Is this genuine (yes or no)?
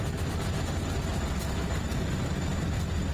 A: yes